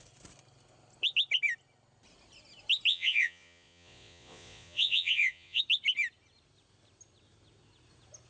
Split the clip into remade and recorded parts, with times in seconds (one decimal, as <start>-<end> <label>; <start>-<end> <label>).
0.0-2.9 recorded; 2.9-5.6 remade; 5.6-8.3 recorded